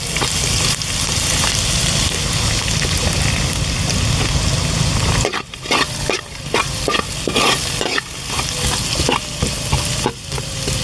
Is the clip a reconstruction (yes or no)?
no